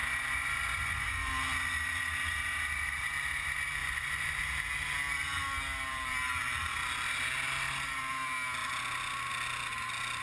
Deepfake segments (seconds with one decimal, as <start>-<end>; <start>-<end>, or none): 0.0-1.3; 3.8-4.4